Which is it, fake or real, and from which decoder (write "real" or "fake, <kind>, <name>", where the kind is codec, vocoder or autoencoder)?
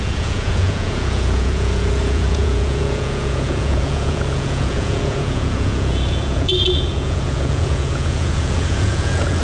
fake, vocoder, Vocos